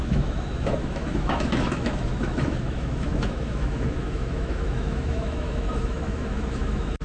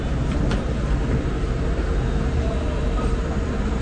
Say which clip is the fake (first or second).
first